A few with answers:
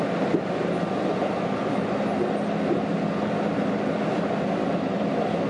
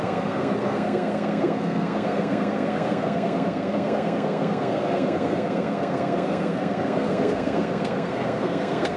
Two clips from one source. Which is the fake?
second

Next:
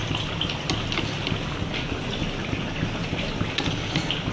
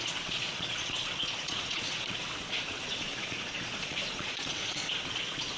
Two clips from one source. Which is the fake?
second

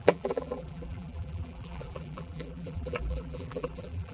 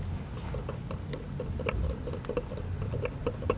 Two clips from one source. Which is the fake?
first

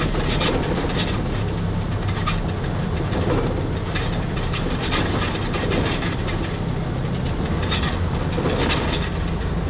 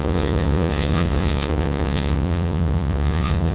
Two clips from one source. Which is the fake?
second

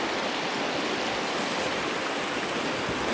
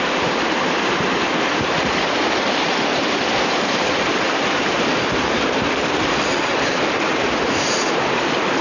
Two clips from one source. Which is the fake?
second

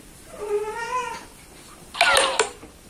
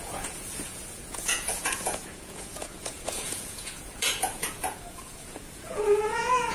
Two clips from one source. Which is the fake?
second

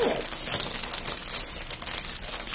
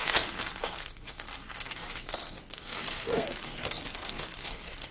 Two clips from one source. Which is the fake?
second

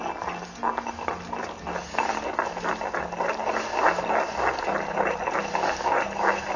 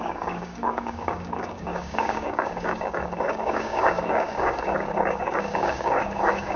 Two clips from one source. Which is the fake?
second